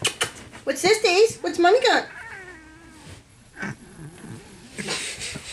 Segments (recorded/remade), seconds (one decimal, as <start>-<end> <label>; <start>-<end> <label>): 0.0-3.3 recorded; 3.3-4.7 remade; 4.7-5.5 recorded